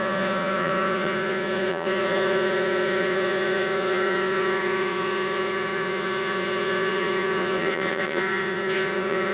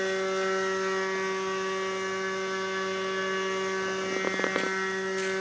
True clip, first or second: second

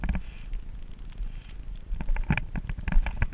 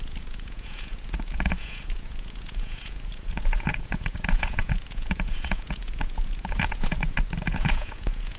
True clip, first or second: first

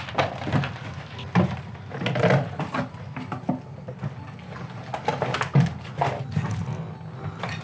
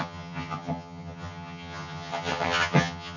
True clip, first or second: first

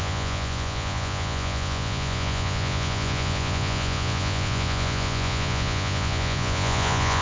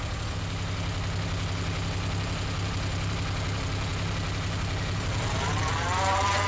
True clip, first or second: second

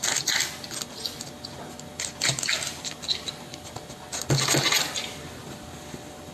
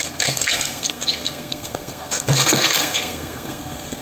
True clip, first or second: first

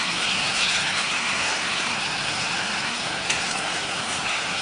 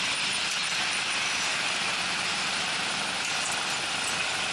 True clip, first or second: second